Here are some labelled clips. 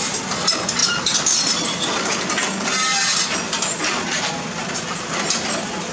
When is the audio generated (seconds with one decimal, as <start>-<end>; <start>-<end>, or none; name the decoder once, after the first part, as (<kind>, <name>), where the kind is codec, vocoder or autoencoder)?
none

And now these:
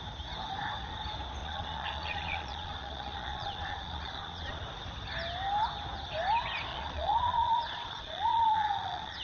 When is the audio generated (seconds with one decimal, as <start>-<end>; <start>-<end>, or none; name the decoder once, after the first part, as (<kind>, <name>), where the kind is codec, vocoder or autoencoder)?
1.4-4.6 (vocoder, Vocos); 6.7-9.2

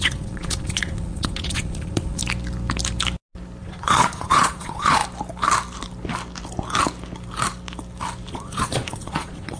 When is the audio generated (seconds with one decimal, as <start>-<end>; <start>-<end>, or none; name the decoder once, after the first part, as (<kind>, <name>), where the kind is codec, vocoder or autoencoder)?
0.0-2.2 (vocoder, Vocos); 3.6-5.0; 8.3-9.6

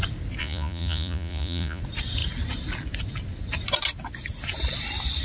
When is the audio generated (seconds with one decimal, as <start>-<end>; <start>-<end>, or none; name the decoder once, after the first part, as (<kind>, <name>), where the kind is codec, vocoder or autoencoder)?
0.4-1.8 (vocoder, Vocos)